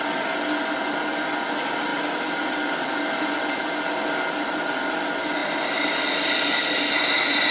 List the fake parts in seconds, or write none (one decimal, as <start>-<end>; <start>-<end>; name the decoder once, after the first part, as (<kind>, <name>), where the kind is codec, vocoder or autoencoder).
none